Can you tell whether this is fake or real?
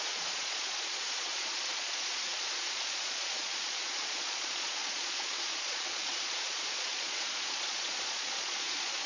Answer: fake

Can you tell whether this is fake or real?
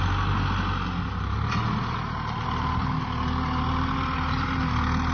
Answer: real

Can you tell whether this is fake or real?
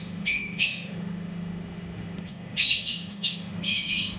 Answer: fake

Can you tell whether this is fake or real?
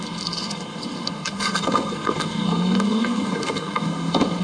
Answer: fake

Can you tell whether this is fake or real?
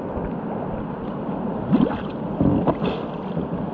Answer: real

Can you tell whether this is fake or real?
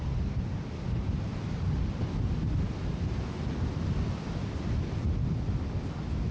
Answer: real